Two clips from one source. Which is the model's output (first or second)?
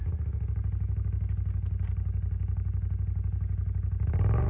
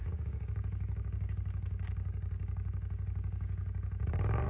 second